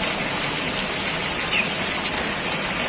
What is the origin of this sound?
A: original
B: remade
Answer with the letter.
A